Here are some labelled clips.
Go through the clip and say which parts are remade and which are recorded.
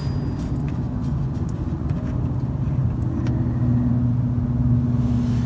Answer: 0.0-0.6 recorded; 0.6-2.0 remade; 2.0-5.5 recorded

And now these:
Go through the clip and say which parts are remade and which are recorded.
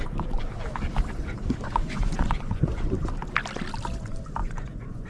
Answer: 0.0-1.2 recorded; 1.2-3.1 remade; 3.1-4.4 recorded; 4.4-5.1 remade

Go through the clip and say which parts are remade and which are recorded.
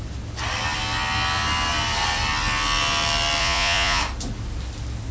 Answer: 0.0-3.4 recorded; 3.4-4.0 remade; 4.0-5.1 recorded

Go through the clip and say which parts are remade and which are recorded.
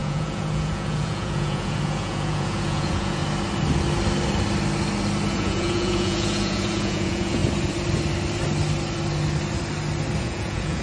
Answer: 0.0-3.2 remade; 3.2-5.3 recorded; 5.3-7.4 remade; 7.4-10.2 recorded; 10.2-10.8 remade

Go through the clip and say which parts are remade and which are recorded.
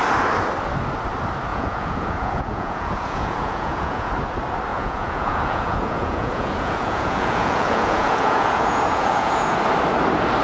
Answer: 0.0-1.5 recorded; 1.5-4.1 remade; 4.1-4.7 recorded; 4.7-9.6 remade; 9.6-10.4 recorded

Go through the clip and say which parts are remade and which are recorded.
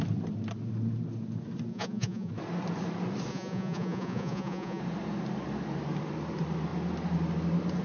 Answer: 0.0-1.7 recorded; 1.7-2.3 remade; 2.3-3.3 recorded; 3.3-4.8 remade; 4.8-7.8 recorded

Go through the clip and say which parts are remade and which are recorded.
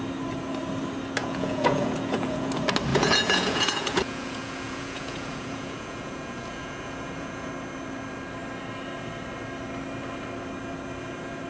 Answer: 0.0-1.2 recorded; 1.2-2.5 remade; 2.5-2.9 recorded; 2.9-7.5 remade; 7.5-11.5 recorded